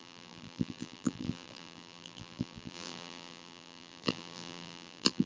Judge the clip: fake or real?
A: fake